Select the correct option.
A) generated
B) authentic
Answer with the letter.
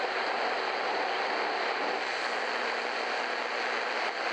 B